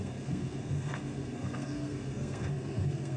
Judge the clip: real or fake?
fake